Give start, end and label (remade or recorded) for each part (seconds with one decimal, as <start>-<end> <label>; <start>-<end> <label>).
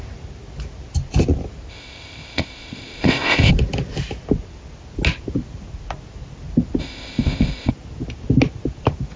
0.0-1.7 recorded; 1.7-3.5 remade; 3.5-6.8 recorded; 6.8-7.7 remade; 7.7-9.2 recorded